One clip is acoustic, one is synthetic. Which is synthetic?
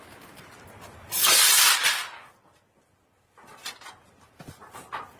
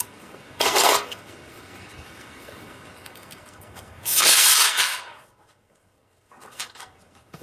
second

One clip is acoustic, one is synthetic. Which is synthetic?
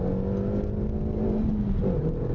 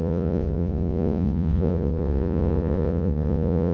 second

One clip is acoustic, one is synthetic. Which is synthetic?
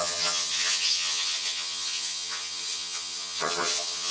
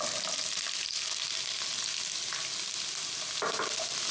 first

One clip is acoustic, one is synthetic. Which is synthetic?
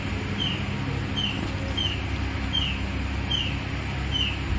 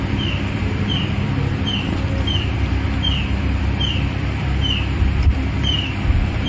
second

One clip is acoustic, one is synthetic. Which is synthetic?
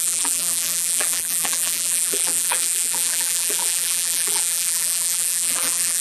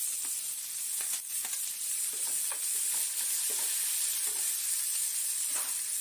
first